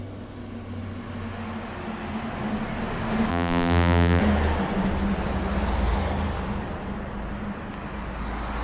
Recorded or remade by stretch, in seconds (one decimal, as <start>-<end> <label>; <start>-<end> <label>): 0.0-3.3 recorded; 3.3-4.2 remade; 4.2-8.6 recorded